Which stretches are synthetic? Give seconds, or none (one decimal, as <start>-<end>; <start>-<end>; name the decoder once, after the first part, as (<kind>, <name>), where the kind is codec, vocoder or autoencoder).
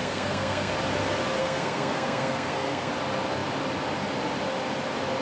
0.0-0.7 (codec, SNAC); 1.4-2.9